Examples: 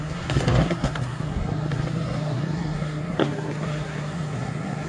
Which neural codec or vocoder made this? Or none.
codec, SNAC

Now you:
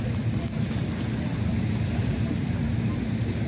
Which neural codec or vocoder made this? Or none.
none